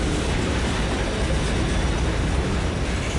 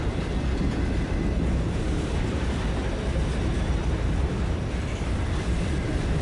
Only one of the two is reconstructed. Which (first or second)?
second